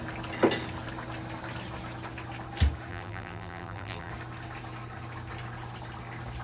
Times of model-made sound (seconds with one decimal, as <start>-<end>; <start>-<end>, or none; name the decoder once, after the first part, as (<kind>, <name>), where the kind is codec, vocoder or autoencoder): 2.9-4.1 (vocoder, BigVGAN v2)